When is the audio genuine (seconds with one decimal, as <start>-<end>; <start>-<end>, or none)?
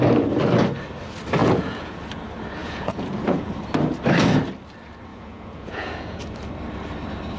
0.0-1.4; 2.0-2.6; 3.5-5.1; 6.2-7.4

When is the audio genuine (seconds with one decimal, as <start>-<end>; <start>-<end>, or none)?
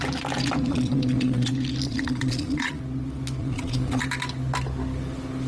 0.0-0.7; 1.5-1.9; 2.8-3.4; 4.0-5.5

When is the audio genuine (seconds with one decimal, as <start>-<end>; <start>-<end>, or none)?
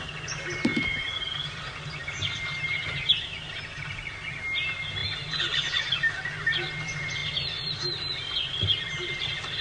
0.0-0.7; 1.6-9.6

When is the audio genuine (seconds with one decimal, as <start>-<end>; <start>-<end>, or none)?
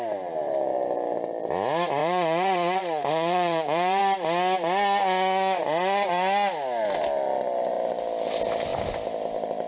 0.0-2.0; 4.0-9.7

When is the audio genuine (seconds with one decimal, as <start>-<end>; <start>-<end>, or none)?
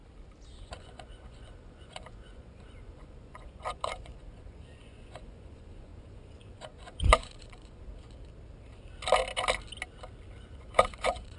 0.0-0.6; 7.9-10.4